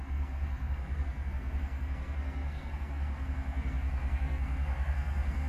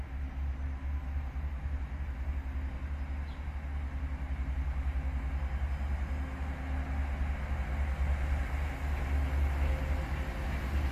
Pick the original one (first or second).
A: second